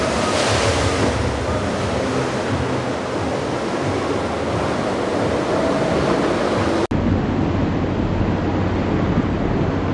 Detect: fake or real real